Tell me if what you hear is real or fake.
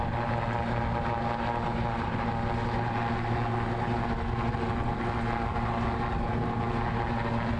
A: real